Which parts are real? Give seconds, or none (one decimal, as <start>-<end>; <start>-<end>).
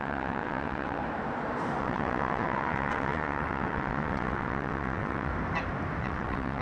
1.0-1.8; 5.3-6.0